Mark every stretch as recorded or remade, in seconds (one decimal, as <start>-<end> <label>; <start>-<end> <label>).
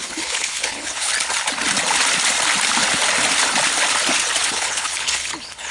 0.0-1.1 remade; 1.1-4.5 recorded; 4.5-5.7 remade